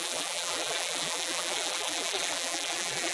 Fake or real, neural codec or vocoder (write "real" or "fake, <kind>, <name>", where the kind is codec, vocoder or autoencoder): fake, vocoder, BigVGAN v2